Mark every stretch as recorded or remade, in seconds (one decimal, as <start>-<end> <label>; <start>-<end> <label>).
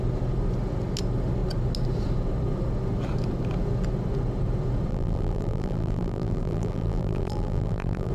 0.0-4.9 recorded; 4.9-8.1 remade